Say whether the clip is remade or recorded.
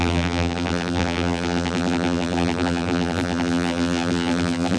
remade